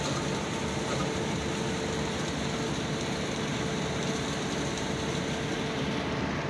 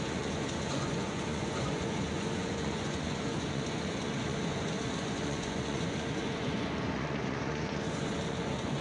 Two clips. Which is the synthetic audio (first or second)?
second